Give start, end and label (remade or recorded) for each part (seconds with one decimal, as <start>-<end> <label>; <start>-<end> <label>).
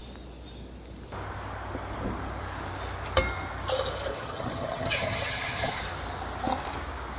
0.0-4.1 recorded; 4.1-5.8 remade; 5.8-7.2 recorded